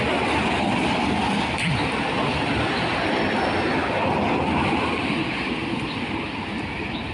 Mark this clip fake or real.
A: real